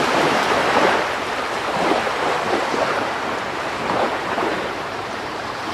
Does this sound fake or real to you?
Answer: fake